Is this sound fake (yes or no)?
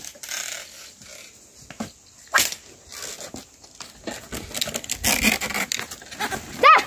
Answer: no